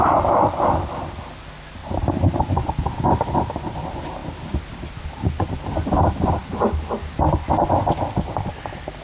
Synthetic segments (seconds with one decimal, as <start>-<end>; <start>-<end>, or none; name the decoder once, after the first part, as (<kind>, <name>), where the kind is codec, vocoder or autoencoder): 1.8-2.3 (vocoder, BigVGAN v2)